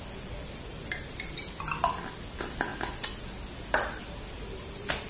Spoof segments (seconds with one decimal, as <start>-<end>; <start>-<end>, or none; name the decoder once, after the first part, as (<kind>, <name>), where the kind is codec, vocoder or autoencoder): none